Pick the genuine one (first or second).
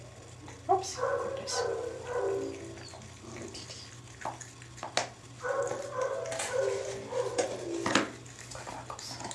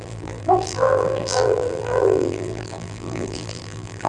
first